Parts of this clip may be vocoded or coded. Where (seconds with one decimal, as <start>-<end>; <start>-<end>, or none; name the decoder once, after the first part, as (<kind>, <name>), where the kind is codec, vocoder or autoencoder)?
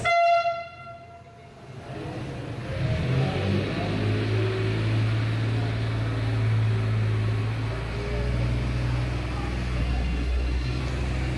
9.8-10.8 (codec, SNAC)